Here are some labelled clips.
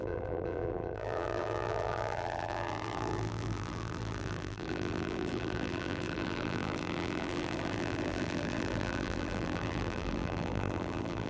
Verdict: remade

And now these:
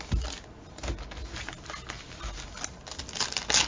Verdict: recorded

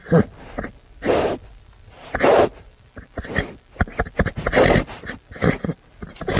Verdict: recorded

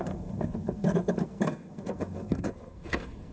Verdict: remade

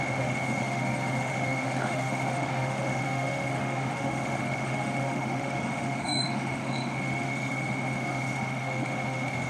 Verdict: remade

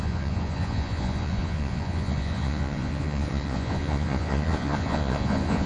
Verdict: remade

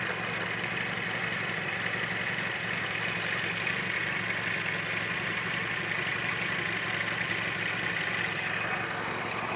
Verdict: recorded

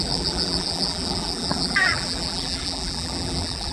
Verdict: remade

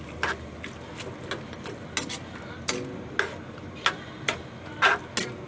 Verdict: recorded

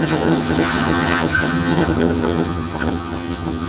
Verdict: remade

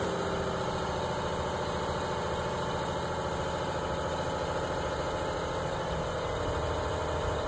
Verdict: recorded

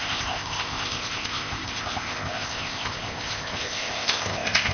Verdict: remade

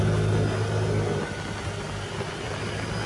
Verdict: recorded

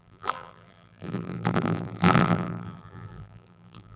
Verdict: remade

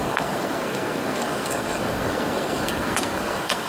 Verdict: remade